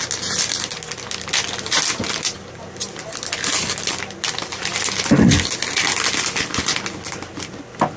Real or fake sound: real